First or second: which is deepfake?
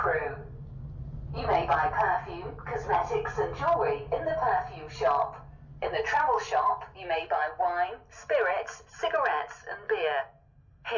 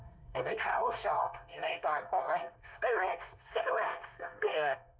second